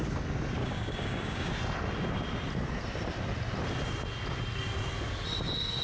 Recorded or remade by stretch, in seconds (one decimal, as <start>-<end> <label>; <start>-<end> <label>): 0.0-0.6 recorded; 0.6-1.5 remade; 1.5-5.8 recorded